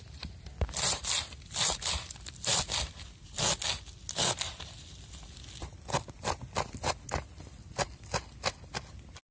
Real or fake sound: real